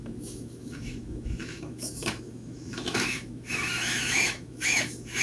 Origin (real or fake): fake